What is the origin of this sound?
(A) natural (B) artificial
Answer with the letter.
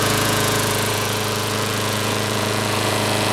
B